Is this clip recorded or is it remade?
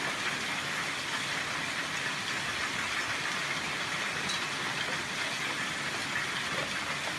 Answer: recorded